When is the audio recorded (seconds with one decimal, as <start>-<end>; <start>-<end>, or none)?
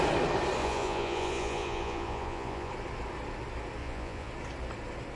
0.0-0.6; 2.7-3.8; 4.3-5.2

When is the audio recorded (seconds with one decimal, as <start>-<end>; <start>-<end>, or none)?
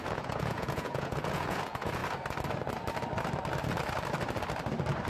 2.0-5.1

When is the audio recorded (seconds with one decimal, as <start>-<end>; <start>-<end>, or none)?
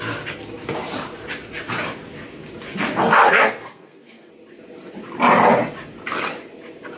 0.0-3.2; 4.3-7.0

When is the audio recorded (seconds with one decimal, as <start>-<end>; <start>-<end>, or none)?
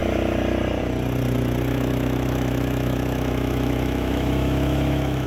0.0-1.7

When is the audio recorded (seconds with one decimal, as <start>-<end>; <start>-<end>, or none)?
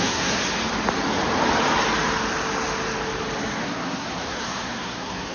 0.4-3.6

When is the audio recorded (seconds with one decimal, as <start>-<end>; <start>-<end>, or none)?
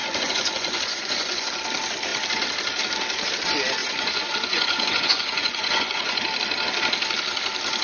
1.5-3.8; 6.2-7.8